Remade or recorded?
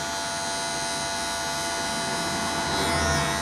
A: recorded